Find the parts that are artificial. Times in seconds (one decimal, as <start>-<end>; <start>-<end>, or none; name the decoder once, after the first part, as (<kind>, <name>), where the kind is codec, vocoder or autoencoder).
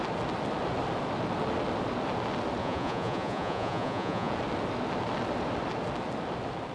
2.6-4.3 (vocoder, Vocos)